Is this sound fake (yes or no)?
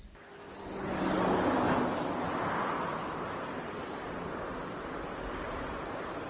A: no